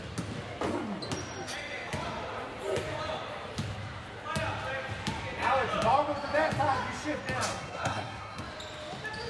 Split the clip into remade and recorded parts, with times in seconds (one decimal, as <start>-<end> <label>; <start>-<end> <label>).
0.0-7.5 recorded; 7.5-8.4 remade; 8.4-9.3 recorded